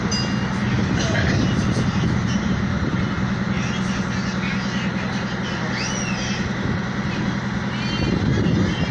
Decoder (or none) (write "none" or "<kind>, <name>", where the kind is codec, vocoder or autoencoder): none